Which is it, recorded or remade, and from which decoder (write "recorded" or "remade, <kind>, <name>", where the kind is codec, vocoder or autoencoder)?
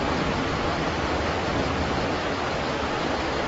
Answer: recorded